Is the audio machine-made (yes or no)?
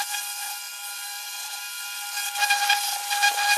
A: no